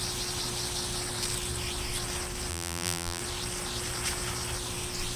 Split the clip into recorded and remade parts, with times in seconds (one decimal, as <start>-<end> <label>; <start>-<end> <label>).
0.0-2.5 recorded; 2.5-3.2 remade; 3.2-5.2 recorded